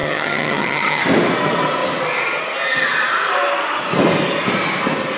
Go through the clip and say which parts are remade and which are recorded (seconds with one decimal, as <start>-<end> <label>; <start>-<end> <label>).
0.0-1.0 remade; 1.0-5.2 recorded